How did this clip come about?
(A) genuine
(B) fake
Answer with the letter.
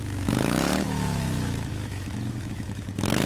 B